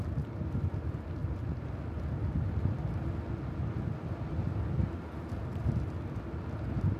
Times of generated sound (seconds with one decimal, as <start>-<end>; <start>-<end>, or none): none